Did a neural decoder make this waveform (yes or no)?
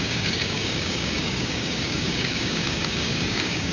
yes